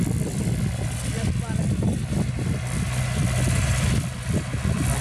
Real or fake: real